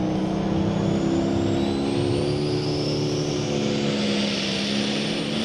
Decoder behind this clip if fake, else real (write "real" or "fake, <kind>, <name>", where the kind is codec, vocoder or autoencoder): real